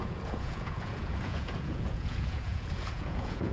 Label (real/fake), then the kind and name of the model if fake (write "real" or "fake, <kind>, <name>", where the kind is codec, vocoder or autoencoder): fake, vocoder, Vocos